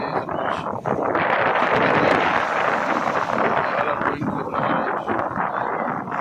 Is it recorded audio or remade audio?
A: remade